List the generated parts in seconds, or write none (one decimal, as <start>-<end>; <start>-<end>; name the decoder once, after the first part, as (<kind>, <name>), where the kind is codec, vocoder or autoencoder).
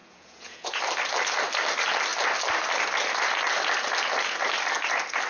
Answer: 0.0-0.8 (vocoder, Vocos)